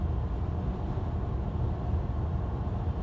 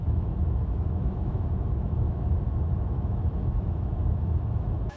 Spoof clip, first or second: second